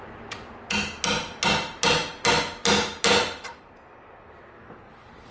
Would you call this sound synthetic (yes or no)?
no